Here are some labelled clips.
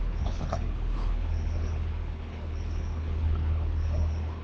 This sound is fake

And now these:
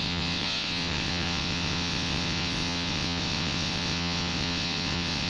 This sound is fake